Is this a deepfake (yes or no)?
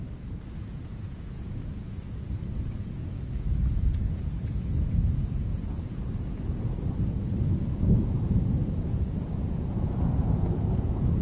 yes